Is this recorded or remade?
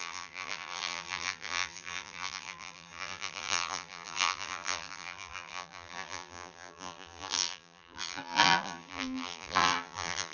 remade